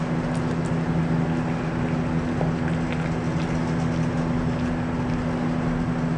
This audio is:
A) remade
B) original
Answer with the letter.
B